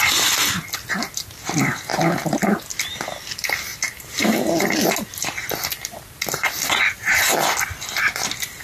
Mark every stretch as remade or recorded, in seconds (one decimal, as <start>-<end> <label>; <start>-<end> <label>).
0.0-8.6 recorded

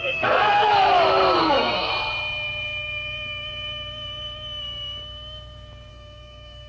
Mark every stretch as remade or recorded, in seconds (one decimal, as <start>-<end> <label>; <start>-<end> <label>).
0.0-0.7 remade; 0.7-1.4 recorded; 1.4-1.9 remade; 1.9-5.9 recorded; 5.9-6.7 remade

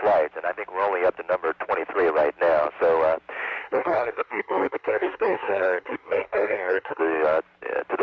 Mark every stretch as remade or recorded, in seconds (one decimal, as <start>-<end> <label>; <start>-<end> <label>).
0.0-3.6 recorded; 3.6-7.0 remade; 7.0-8.0 recorded

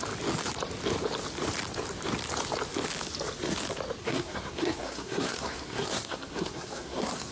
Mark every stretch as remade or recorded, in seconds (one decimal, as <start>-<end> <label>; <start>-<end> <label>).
0.0-4.0 recorded; 4.0-7.3 remade

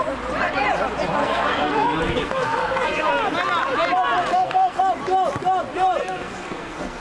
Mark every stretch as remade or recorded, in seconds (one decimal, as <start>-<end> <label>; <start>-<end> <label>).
0.0-1.2 recorded; 1.2-3.1 remade; 3.1-4.3 recorded; 4.3-4.8 remade; 4.8-6.0 recorded; 6.0-7.0 remade

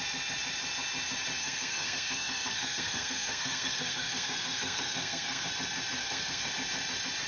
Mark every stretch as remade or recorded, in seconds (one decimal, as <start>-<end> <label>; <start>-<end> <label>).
0.0-1.4 recorded; 1.4-5.5 remade; 5.5-6.0 recorded; 6.0-6.5 remade; 6.5-7.3 recorded

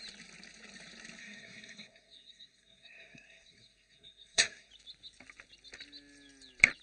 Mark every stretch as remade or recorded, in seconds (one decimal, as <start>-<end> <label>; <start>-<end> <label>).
0.0-1.2 recorded; 1.2-4.7 remade; 4.7-6.8 recorded

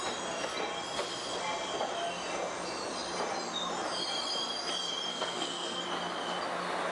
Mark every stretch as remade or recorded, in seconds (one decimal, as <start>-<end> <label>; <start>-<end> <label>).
0.0-5.1 recorded; 5.1-5.8 remade; 5.8-6.9 recorded